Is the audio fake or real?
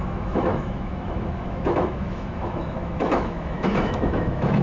fake